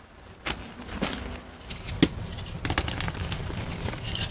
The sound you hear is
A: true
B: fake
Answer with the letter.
A